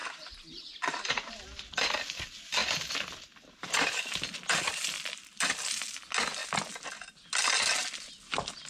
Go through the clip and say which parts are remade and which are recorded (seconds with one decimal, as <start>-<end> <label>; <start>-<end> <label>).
0.0-1.1 remade; 1.1-2.6 recorded; 2.6-6.0 remade; 6.0-6.4 recorded; 6.4-7.1 remade; 7.1-8.7 recorded